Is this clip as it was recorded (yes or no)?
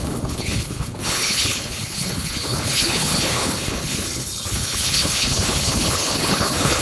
no